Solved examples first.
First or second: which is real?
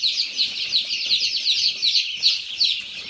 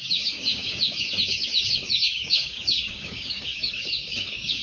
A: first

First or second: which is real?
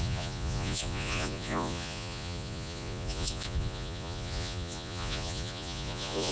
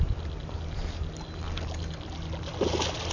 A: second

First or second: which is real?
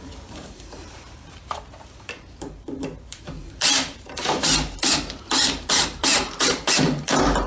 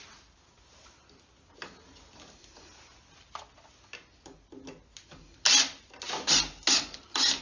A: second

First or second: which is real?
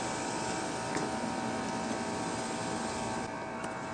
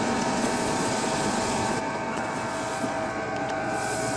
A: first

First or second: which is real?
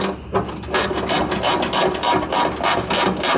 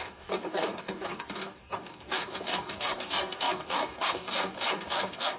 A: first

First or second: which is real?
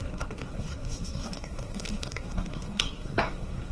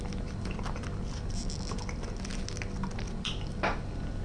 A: second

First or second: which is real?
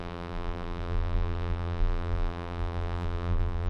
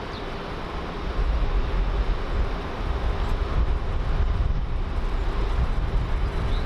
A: second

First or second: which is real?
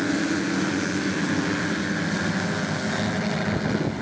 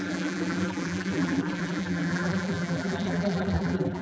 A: first